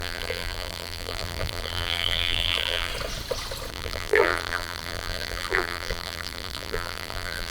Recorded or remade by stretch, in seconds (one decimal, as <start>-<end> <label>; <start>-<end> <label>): 0.0-2.9 remade; 2.9-3.7 recorded; 3.7-7.5 remade